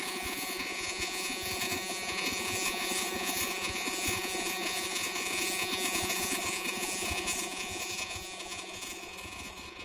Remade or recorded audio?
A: remade